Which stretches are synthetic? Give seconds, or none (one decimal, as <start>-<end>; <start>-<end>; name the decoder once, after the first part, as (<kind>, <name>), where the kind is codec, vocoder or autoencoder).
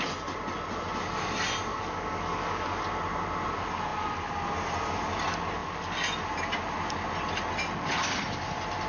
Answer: 1.7-2.8 (codec, DAC)